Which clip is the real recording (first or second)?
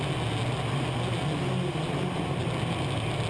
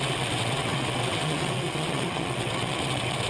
first